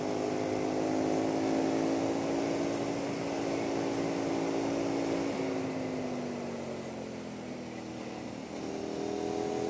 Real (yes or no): yes